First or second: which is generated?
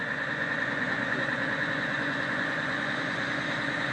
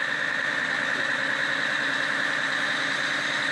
first